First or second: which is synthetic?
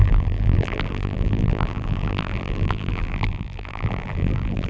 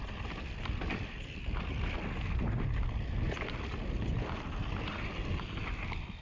first